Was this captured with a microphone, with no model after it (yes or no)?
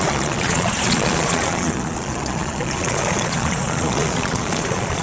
no